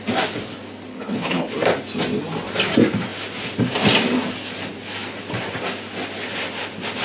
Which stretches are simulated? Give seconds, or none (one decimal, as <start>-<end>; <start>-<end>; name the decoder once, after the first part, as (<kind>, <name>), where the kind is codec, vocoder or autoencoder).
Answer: 0.9-1.5 (codec, HILCodec)